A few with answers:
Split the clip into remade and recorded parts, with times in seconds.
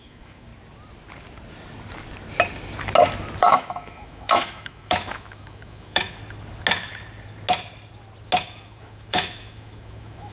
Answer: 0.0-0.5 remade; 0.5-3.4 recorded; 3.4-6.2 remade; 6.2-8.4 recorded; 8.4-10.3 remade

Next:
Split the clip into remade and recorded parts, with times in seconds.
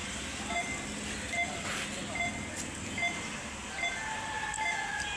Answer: 0.0-5.2 recorded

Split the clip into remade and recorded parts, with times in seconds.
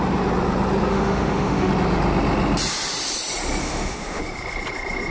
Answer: 0.0-0.9 recorded; 0.9-1.7 remade; 1.7-3.6 recorded; 3.6-4.2 remade; 4.2-5.1 recorded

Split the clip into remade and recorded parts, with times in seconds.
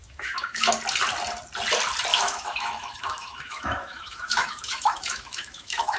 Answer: 0.0-0.7 remade; 0.7-2.1 recorded; 2.1-6.0 remade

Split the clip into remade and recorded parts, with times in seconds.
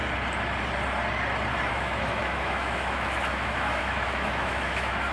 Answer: 0.0-1.7 recorded; 1.7-5.1 remade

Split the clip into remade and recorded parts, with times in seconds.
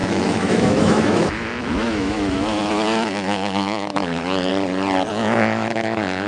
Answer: 0.0-4.5 remade; 4.5-5.1 recorded; 5.1-6.3 remade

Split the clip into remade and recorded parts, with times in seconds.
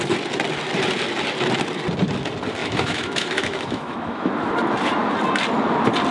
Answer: 0.0-2.6 recorded; 2.6-4.3 remade; 4.3-6.1 recorded